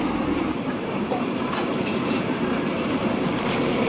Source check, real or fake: fake